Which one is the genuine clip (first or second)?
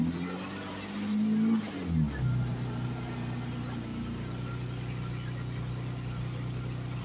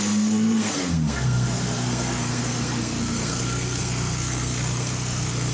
first